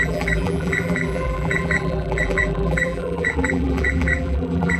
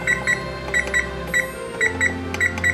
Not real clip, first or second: first